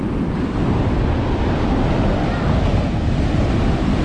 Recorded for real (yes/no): yes